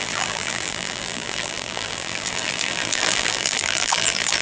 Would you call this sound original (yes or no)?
no